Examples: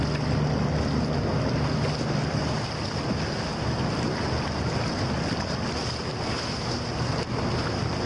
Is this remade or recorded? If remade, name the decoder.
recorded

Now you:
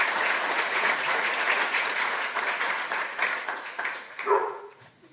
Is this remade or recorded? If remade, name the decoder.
remade, vocoder, Vocos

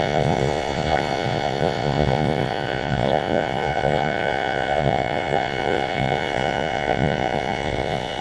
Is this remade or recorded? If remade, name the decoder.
remade, vocoder, Vocos